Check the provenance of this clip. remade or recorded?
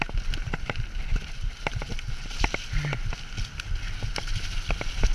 recorded